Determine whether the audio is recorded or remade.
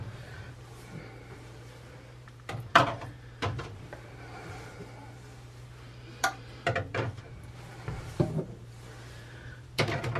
remade